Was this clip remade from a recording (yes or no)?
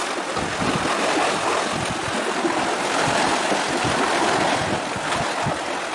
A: no